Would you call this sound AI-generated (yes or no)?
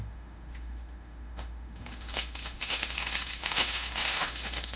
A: yes